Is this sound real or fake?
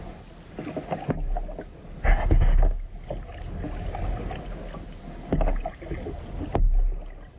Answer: real